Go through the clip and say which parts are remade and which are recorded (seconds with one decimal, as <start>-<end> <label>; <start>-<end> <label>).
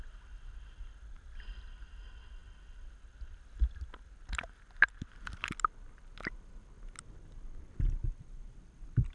0.0-9.1 recorded